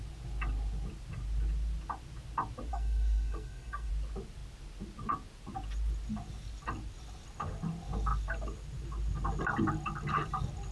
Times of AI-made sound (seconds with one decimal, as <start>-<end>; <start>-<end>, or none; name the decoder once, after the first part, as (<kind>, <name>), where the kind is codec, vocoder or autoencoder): 2.7-3.9 (codec, SNAC)